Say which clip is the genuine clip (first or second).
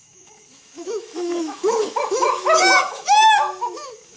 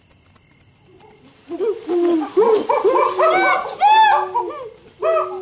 second